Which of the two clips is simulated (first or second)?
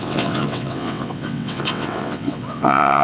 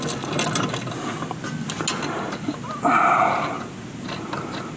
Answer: first